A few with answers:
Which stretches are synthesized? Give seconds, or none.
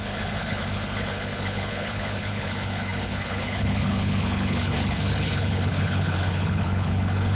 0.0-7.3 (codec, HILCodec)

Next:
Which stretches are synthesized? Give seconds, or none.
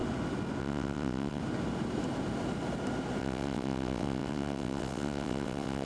0.6-1.4 (vocoder, WaveNeXt); 3.2-5.9